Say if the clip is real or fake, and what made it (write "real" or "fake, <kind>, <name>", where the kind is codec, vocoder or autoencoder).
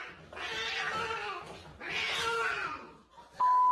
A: real